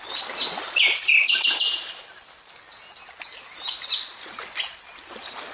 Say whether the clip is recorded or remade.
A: recorded